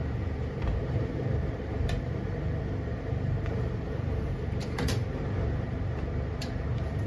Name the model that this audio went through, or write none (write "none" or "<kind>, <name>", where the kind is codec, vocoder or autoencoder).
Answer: vocoder, BigVGAN v2